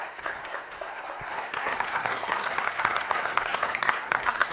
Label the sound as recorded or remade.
remade